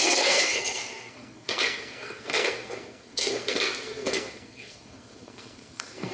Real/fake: fake